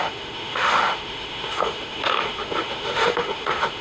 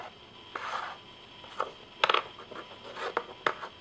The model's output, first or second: first